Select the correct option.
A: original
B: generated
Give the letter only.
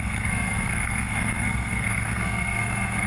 B